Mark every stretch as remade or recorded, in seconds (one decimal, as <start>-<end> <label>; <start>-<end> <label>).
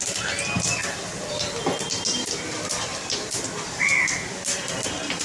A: 0.0-5.2 recorded